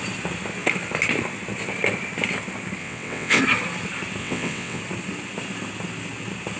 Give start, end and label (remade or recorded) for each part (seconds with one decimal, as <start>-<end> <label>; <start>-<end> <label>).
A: 0.0-2.8 recorded; 2.8-3.4 remade; 3.4-4.2 recorded; 4.2-4.8 remade; 4.8-6.6 recorded